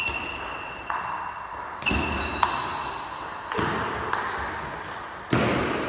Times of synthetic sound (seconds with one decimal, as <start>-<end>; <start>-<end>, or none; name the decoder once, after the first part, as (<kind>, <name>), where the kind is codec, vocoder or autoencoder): 0.5-1.0 (vocoder, WaveNeXt)